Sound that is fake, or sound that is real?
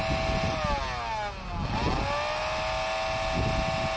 real